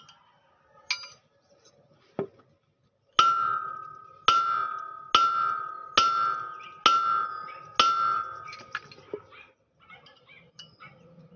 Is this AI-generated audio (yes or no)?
no